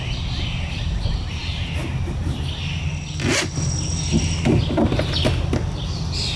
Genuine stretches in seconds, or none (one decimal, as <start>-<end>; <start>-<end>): 0.0-6.4